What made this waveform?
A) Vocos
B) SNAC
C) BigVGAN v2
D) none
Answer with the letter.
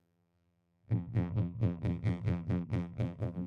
C